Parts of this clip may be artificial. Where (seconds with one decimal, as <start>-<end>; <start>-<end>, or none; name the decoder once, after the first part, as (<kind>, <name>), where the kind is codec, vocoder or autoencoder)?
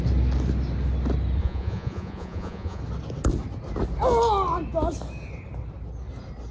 1.4-2.8 (vocoder, Vocos)